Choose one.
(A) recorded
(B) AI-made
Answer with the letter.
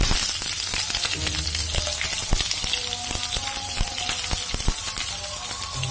A